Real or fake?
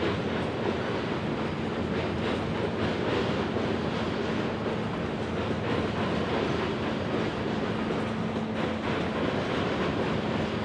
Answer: real